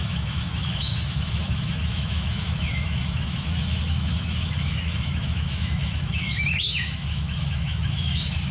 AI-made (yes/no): yes